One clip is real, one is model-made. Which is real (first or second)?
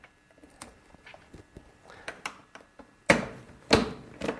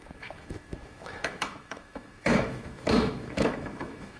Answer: first